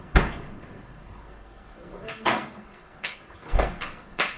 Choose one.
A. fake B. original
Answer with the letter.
A